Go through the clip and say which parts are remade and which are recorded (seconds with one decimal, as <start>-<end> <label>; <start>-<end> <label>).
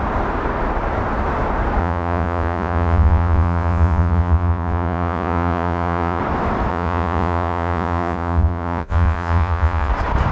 0.0-1.8 recorded; 1.8-6.2 remade; 6.2-6.7 recorded; 6.7-9.9 remade; 9.9-10.3 recorded